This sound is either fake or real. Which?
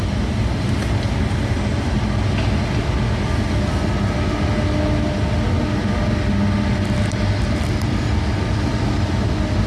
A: real